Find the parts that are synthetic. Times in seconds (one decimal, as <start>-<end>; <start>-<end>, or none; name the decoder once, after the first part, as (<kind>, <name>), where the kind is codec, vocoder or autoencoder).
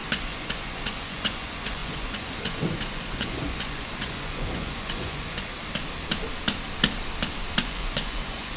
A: 0.0-5.5 (vocoder, Vocos); 7.6-8.6